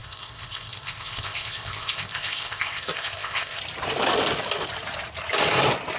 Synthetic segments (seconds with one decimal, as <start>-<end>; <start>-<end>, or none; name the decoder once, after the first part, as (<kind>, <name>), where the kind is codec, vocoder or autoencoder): 0.0-3.6 (codec, ZipCodec)